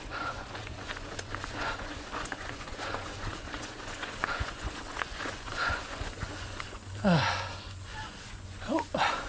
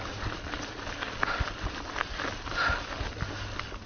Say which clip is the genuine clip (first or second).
second